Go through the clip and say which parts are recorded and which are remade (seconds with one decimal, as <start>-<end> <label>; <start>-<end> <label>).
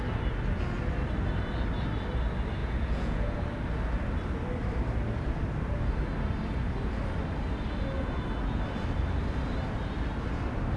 0.0-2.6 recorded; 2.6-3.4 remade; 3.4-10.8 recorded